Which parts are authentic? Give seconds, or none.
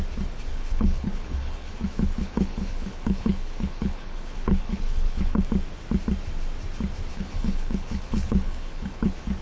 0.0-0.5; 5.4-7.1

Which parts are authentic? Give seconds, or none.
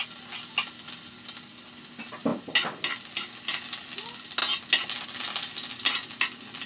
0.0-6.7